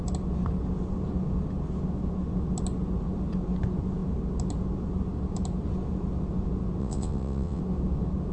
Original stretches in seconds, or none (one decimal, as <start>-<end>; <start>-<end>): 0.0-6.8; 7.6-8.3